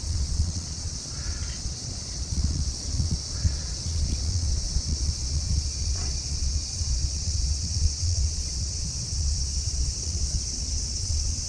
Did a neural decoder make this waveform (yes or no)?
yes